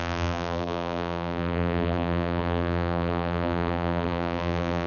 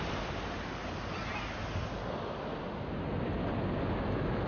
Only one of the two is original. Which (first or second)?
second